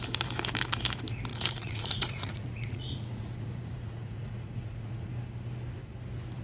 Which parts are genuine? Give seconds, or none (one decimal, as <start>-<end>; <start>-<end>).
0.0-1.3; 5.1-6.4